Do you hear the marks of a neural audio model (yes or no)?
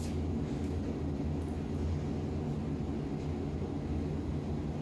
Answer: no